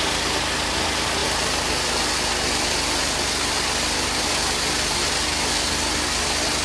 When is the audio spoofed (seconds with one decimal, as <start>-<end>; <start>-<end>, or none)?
none